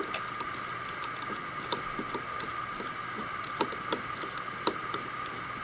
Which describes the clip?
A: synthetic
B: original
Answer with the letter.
B